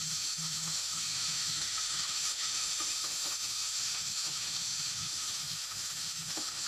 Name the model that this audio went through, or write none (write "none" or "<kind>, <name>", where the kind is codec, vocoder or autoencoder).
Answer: autoencoder, DAC-VAE